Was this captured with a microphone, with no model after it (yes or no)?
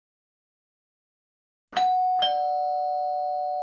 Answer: yes